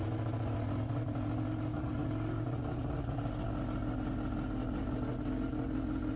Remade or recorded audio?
recorded